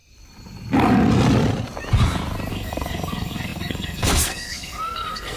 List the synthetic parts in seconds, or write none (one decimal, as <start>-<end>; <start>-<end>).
2.5-5.4